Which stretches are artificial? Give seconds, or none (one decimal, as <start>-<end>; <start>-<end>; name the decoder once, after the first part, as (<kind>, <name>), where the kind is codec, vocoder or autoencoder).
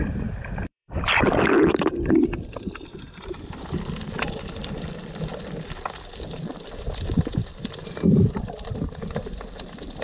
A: 0.0-10.0 (vocoder, BigVGAN v2)